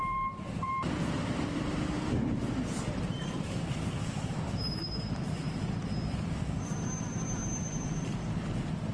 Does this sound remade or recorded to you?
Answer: remade